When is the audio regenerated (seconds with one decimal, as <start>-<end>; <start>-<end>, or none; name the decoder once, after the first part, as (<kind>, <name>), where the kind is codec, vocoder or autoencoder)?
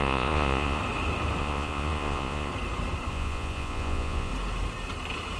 0.0-0.8 (vocoder, Vocos); 1.4-2.5; 3.1-4.3